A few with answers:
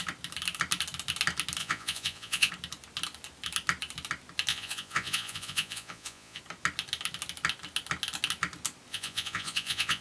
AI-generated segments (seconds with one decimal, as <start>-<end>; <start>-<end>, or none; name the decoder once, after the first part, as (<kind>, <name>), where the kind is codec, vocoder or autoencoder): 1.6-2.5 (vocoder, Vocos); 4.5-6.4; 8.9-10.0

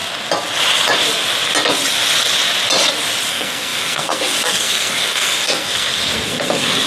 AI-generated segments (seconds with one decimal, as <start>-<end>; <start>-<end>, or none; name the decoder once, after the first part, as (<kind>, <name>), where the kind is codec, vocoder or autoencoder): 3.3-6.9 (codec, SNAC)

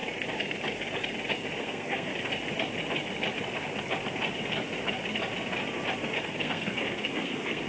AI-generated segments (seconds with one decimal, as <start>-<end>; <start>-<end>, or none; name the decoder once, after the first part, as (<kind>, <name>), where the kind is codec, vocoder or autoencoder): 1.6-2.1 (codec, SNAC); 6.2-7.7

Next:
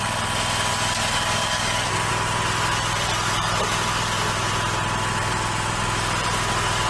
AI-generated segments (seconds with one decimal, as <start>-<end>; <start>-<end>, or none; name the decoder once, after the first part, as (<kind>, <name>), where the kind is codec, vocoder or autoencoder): 0.7-2.1 (codec, DAC)

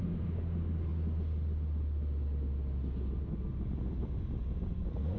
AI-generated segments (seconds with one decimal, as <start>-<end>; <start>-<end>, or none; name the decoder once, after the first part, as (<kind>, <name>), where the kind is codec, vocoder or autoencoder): none

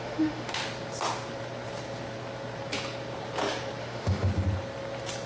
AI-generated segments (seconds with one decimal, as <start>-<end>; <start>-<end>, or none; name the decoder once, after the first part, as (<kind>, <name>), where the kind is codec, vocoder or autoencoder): 0.0-0.6 (autoencoder, DAC-VAE); 3.8-4.3

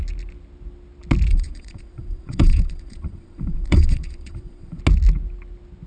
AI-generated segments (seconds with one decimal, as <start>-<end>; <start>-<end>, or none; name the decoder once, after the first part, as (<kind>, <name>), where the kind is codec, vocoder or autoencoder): 1.3-4.8 (vocoder, Vocos)